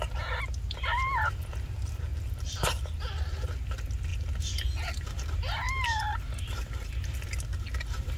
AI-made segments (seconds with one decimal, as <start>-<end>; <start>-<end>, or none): none

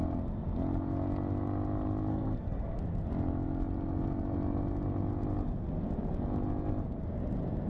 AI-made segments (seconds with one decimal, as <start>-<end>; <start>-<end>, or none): 2.1-2.8

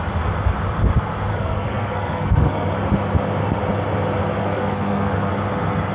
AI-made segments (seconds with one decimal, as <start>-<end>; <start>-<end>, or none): 1.3-2.7; 4.4-5.3

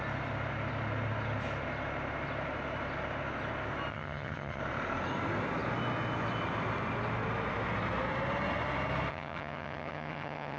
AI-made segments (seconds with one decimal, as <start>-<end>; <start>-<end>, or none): 3.9-4.6; 9.1-10.6